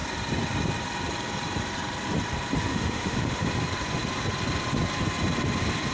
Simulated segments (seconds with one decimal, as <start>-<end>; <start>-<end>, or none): 2.7-3.5